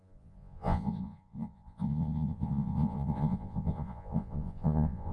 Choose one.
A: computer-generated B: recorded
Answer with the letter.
A